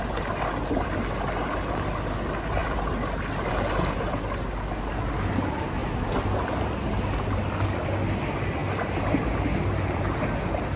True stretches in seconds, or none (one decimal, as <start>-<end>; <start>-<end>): 0.0-10.8